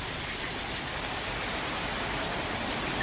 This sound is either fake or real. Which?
real